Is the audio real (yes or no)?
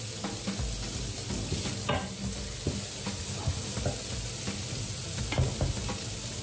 yes